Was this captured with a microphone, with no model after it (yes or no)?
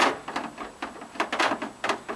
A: yes